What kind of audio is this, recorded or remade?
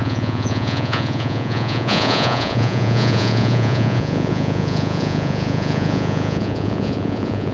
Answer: remade